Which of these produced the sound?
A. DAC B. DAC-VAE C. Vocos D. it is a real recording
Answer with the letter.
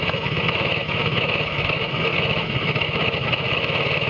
B